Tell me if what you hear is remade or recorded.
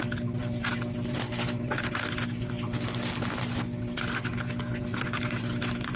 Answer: recorded